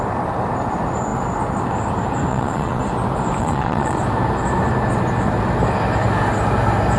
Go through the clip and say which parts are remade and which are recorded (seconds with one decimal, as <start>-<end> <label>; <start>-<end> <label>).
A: 0.0-2.3 recorded; 2.3-2.8 remade; 2.8-3.4 recorded; 3.4-4.0 remade; 4.0-7.0 recorded